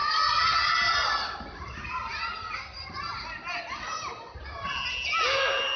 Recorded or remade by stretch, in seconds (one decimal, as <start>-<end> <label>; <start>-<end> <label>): 0.0-1.9 remade; 1.9-5.8 recorded